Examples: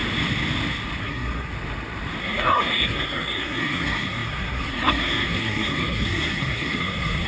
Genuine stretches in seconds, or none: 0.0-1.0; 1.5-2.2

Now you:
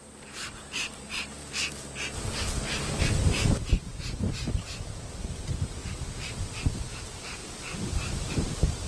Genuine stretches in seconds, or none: 3.9-4.6; 5.8-7.0; 7.4-8.3

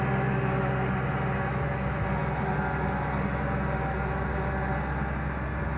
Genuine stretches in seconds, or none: 0.0-5.8